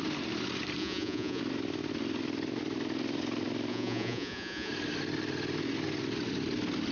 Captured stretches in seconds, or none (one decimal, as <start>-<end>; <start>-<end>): 0.0-0.8; 1.4-3.7; 4.7-6.9